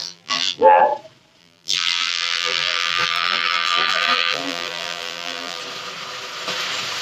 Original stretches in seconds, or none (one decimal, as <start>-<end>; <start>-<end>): 0.8-1.4; 5.6-7.0